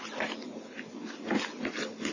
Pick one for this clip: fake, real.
real